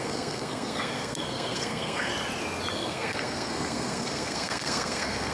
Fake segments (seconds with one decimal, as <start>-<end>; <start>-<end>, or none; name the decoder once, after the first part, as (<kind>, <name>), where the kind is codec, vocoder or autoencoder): 0.0-2.1 (codec, SNAC); 2.7-5.3